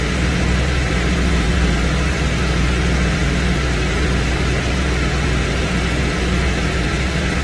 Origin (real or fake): fake